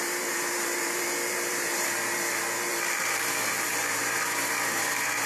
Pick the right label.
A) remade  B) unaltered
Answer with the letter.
A